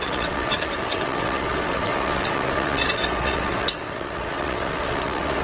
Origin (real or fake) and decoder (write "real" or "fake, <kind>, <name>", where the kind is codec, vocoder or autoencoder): fake, vocoder, WaveNeXt